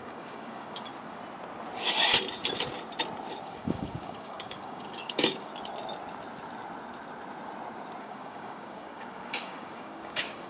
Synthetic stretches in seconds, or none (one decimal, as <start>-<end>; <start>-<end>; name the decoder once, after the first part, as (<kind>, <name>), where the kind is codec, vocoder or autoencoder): 0.0-0.9 (codec, DAC); 3.4-5.5; 8.0-10.5